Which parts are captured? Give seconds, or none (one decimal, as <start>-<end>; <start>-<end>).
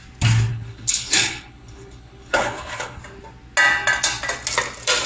0.0-0.5; 3.0-5.1